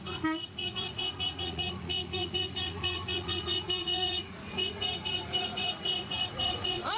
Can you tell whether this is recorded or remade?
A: remade